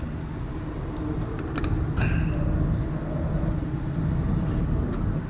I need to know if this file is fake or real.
real